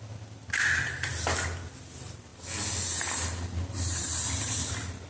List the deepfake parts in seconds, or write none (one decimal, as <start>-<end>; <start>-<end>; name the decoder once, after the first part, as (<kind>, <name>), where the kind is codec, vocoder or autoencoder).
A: none